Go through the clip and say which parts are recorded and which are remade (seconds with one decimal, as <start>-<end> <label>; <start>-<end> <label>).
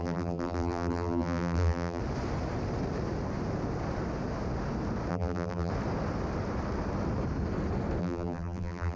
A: 0.0-2.0 remade; 2.0-5.1 recorded; 5.1-5.7 remade; 5.7-8.0 recorded; 8.0-9.0 remade